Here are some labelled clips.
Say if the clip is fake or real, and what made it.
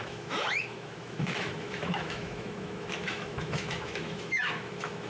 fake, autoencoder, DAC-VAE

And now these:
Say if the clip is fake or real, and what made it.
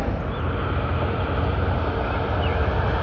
real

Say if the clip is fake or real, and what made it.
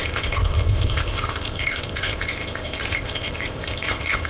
fake, codec, ZipCodec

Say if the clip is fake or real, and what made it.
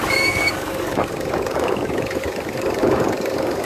fake, codec, DAC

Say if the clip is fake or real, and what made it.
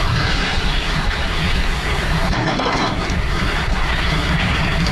fake, codec, SNAC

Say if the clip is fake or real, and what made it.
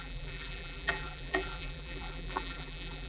fake, vocoder, BigVGAN v2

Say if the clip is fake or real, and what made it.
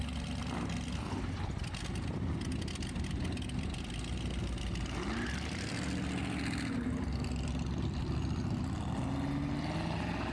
real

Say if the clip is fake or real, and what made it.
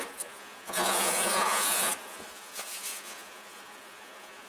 fake, vocoder, Vocos